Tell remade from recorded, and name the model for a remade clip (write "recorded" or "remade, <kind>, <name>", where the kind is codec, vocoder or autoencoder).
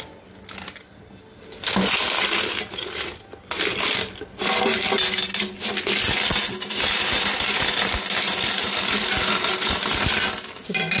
recorded